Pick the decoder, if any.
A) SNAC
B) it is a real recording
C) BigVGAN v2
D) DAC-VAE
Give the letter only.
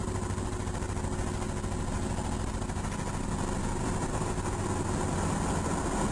B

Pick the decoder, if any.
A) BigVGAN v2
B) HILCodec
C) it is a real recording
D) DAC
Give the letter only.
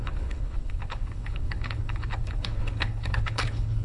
B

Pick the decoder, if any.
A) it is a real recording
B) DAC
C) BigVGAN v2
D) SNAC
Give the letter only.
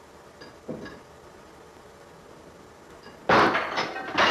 A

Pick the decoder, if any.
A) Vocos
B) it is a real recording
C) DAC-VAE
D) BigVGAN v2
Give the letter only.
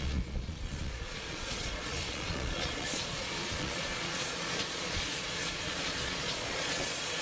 A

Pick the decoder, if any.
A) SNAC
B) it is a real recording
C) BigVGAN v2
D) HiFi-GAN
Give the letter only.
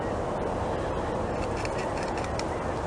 B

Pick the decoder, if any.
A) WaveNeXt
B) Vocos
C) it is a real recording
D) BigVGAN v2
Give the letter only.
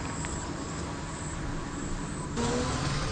D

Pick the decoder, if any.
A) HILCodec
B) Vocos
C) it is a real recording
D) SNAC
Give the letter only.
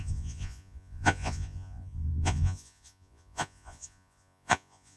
B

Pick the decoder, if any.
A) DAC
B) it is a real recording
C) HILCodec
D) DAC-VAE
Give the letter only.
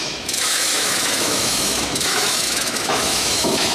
D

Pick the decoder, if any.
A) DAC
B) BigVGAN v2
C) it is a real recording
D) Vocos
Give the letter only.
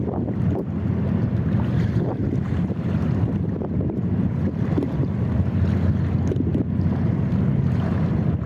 C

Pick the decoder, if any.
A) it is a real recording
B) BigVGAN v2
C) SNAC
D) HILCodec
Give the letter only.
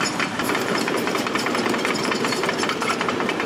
B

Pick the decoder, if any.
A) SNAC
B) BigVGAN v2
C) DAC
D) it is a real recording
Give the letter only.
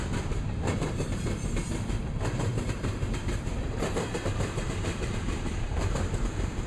B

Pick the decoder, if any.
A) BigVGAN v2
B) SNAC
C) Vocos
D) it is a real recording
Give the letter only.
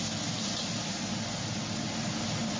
D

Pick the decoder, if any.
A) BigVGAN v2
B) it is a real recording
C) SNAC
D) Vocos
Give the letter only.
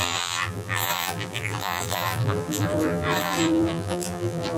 A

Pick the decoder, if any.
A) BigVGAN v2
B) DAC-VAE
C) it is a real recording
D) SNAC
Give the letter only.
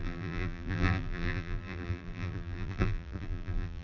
A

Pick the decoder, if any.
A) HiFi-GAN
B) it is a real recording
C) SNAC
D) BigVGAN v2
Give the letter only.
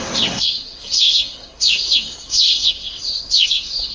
C